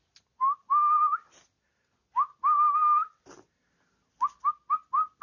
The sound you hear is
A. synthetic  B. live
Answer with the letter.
B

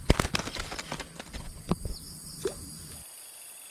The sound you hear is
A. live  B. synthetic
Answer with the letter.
A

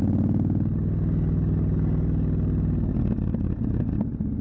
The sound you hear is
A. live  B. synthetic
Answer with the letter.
A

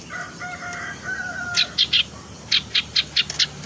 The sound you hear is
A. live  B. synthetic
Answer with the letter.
A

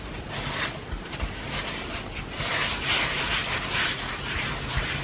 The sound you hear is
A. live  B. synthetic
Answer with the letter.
A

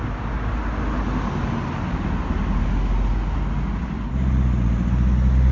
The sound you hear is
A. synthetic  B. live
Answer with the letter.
B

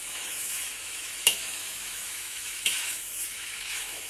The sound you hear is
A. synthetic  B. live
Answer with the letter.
A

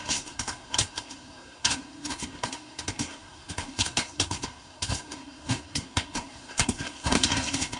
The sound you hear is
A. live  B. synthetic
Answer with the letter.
B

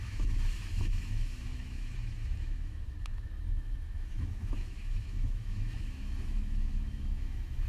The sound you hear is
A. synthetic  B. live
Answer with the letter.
A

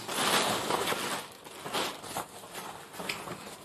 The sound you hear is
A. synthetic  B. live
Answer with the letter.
B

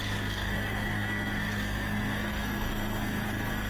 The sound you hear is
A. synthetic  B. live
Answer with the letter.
A